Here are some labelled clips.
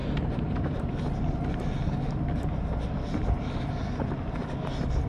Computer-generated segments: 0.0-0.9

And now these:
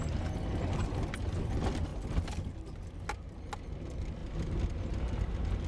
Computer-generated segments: 1.9-3.0

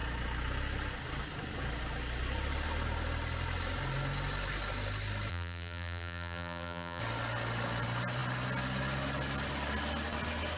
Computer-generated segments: 5.3-7.0

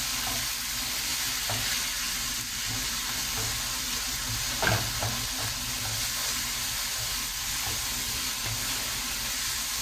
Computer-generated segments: 1.1-5.1; 6.2-7.1

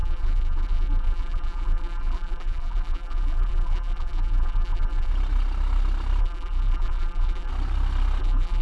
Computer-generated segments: 0.0-5.1; 6.2-7.5; 8.2-8.6

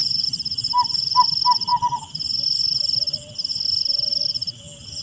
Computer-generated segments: 0.0-1.2